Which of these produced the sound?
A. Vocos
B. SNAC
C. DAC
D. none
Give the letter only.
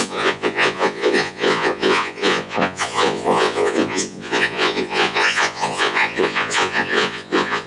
A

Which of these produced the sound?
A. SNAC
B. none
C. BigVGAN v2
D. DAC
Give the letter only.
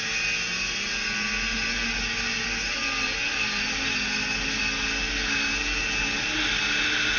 B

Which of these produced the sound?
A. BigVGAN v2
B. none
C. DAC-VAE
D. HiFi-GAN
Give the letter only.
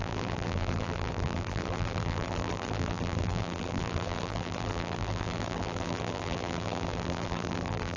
A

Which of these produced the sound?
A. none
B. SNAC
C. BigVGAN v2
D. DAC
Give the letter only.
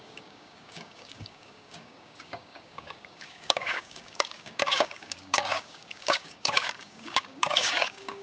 D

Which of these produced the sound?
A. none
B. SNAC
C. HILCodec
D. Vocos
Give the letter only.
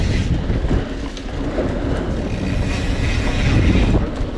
A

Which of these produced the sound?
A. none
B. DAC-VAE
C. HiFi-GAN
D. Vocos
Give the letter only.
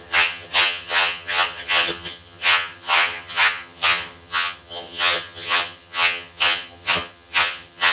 C